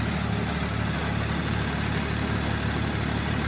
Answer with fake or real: real